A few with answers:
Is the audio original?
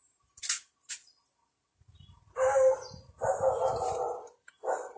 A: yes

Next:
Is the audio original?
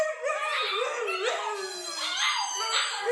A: yes